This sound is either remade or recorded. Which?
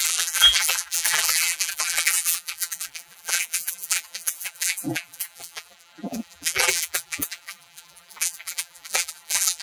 remade